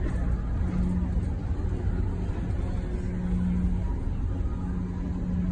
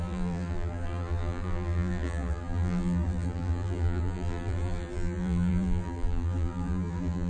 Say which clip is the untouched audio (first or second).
first